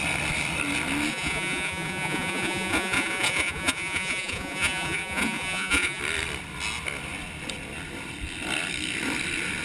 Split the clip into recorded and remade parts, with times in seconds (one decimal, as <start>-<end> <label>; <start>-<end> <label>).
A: 0.0-1.1 recorded; 1.1-6.0 remade; 6.0-9.6 recorded

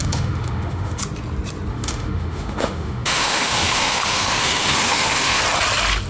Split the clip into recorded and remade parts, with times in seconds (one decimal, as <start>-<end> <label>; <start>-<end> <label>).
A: 0.0-1.0 remade; 1.0-1.7 recorded; 1.7-5.4 remade; 5.4-6.1 recorded

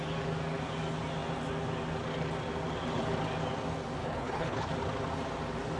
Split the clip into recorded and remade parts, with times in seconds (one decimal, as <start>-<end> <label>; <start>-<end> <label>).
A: 0.0-4.0 recorded; 4.0-4.7 remade; 4.7-5.8 recorded